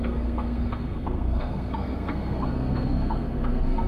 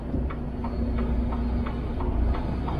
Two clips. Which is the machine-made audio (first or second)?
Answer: first